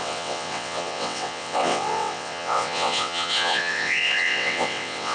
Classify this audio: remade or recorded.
remade